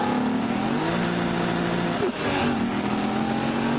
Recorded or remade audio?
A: recorded